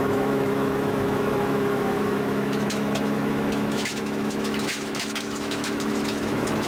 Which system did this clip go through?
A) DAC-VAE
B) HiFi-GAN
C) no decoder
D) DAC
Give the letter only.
A